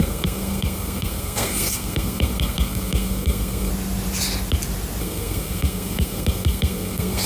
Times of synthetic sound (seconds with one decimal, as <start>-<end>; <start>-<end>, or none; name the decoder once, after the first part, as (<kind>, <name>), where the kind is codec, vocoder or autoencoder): 0.0-3.7 (codec, SNAC); 5.0-7.3